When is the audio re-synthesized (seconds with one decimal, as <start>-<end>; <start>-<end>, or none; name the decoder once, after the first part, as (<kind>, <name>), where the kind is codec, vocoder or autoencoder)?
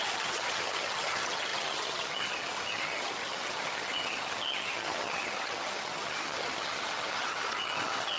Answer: 0.0-8.2 (vocoder, HiFi-GAN)